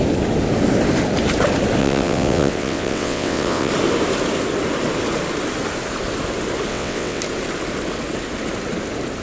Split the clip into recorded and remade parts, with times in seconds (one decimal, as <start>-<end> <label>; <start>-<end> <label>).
0.0-1.8 recorded; 1.8-3.7 remade; 3.7-6.7 recorded; 6.7-7.2 remade; 7.2-9.2 recorded

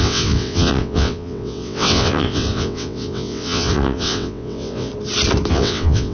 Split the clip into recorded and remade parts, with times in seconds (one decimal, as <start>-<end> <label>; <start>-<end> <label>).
0.0-4.9 remade; 4.9-5.5 recorded; 5.5-6.1 remade